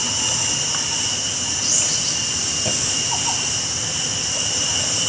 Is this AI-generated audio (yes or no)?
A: no